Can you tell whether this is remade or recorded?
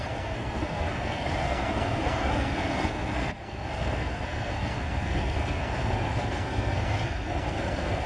remade